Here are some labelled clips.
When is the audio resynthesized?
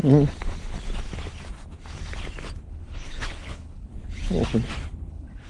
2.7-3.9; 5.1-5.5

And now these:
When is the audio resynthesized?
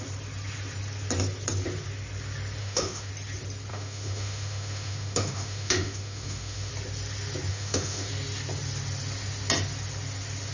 2.6-3.1; 3.7-6.7; 7.5-8.1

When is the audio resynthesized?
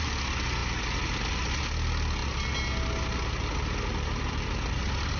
none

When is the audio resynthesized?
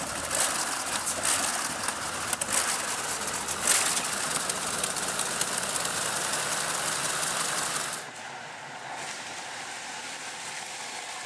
8.4-11.3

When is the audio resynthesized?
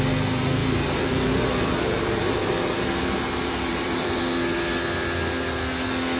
0.6-4.2